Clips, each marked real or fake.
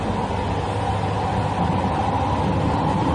real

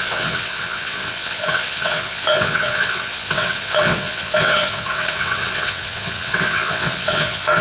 fake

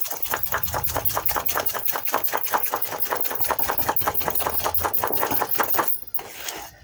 real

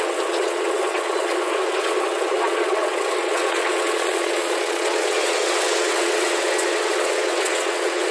fake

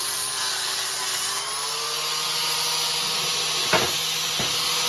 real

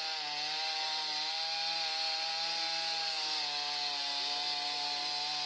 real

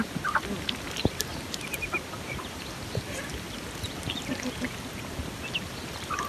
real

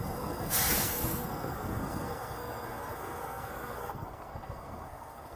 fake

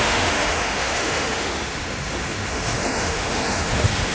fake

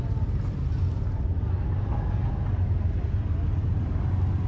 real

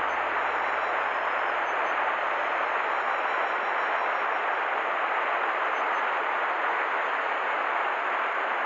real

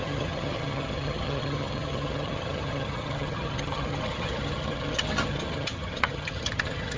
fake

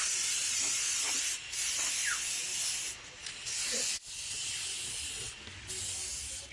real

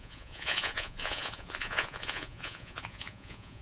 fake